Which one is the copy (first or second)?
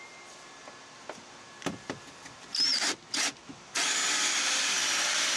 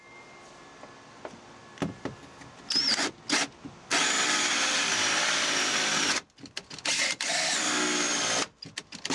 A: first